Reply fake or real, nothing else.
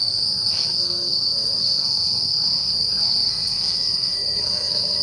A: fake